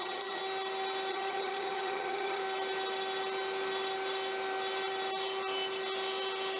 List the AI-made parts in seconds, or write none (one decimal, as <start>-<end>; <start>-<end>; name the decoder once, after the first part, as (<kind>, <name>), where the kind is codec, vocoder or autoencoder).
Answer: 0.0-0.4 (vocoder, HiFi-GAN); 1.1-2.4